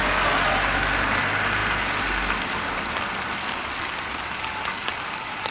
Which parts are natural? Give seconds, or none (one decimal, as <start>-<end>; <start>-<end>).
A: 0.0-4.7